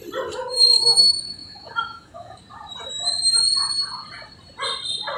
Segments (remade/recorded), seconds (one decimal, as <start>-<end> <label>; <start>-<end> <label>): 0.0-0.4 recorded; 0.4-2.4 remade; 2.4-5.2 recorded